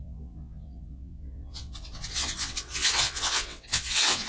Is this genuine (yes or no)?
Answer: no